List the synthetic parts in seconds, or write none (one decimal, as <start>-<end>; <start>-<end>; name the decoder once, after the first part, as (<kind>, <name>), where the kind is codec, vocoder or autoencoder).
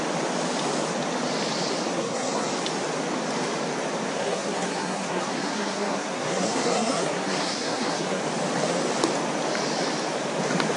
1.9-2.5 (codec, SNAC); 4.1-8.2